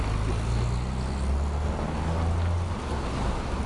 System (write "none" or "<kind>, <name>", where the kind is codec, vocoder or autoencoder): none